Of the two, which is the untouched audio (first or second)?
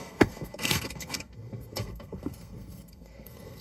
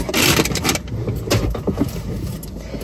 second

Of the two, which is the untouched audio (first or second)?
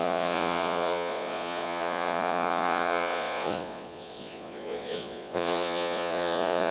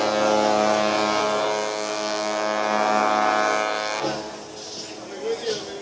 second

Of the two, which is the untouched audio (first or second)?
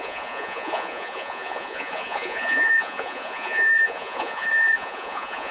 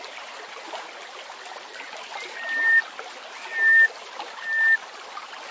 second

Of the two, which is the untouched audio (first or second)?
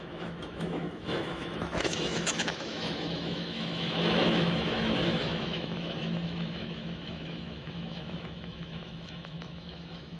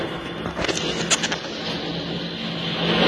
second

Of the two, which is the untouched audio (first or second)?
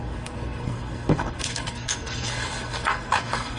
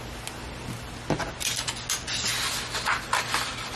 second